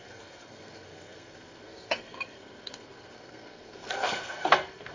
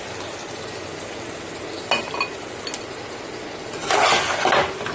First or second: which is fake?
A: first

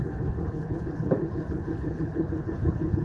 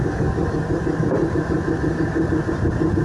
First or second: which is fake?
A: first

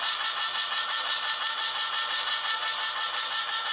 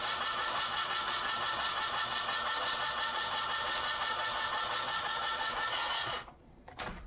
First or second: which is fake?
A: second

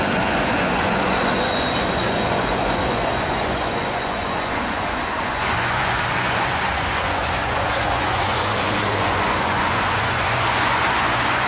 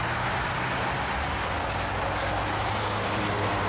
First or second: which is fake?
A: first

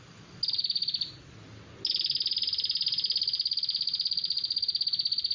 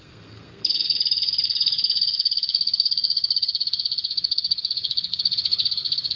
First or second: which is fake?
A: second